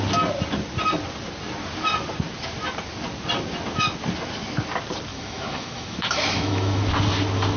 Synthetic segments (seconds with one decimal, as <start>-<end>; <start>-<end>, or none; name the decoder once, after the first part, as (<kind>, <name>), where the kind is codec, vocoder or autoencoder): 5.1-6.8 (autoencoder, DAC-VAE)